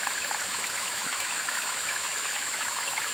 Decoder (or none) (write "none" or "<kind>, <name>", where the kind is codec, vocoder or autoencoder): autoencoder, DAC-VAE